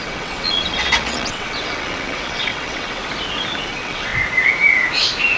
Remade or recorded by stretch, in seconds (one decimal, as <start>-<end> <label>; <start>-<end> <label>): 0.0-3.0 remade; 3.0-3.6 recorded; 3.6-4.1 remade; 4.1-5.4 recorded